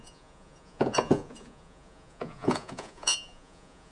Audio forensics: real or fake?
fake